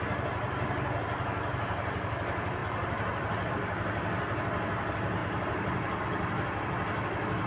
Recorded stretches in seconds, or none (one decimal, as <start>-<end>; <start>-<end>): 0.0-2.6; 3.5-5.2; 6.0-7.5